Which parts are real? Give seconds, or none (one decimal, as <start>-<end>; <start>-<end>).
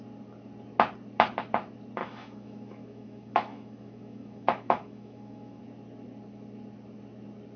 0.0-2.0; 5.6-7.6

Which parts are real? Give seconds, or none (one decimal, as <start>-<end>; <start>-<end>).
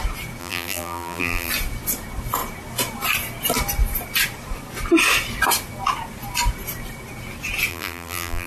0.0-0.4; 1.5-7.7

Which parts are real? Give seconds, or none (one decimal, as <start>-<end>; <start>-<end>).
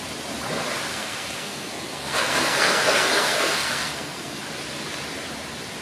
0.0-0.9; 4.4-5.8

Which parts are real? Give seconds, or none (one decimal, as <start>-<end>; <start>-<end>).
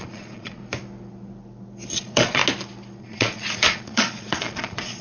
0.6-1.9; 2.4-3.0